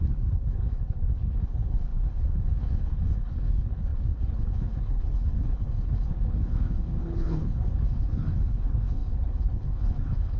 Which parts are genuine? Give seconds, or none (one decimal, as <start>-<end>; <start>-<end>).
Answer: none